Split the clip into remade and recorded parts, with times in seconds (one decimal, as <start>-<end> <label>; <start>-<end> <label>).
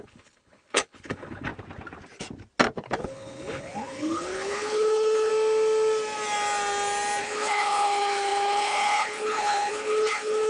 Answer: 0.0-1.5 remade; 1.5-3.0 recorded; 3.0-5.3 remade; 5.3-7.2 recorded; 7.2-10.5 remade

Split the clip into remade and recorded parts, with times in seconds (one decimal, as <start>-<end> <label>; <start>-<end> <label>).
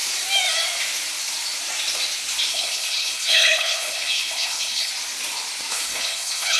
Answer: 0.0-2.5 recorded; 2.5-4.9 remade; 4.9-5.7 recorded; 5.7-6.6 remade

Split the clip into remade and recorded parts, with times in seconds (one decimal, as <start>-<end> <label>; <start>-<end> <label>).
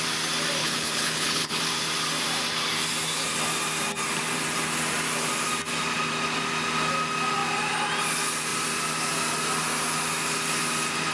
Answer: 0.0-0.6 recorded; 0.6-1.6 remade; 1.6-11.1 recorded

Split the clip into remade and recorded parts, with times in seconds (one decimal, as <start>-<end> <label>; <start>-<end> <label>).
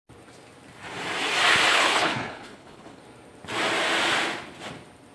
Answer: 0.0-1.7 recorded; 1.7-3.0 remade; 3.0-5.1 recorded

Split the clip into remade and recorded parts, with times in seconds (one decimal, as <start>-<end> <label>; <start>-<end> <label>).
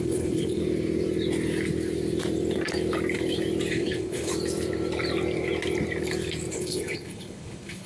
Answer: 0.0-0.6 remade; 0.6-3.7 recorded; 3.7-4.3 remade; 4.3-6.5 recorded; 6.5-7.9 remade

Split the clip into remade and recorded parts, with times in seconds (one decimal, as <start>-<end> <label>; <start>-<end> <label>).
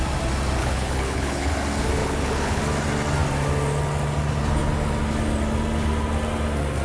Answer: 0.0-0.6 recorded; 0.6-1.5 remade; 1.5-2.0 recorded; 2.0-2.6 remade; 2.6-6.8 recorded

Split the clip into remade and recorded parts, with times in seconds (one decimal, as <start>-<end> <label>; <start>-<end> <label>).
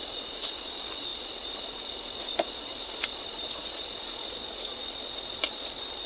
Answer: 0.0-6.1 recorded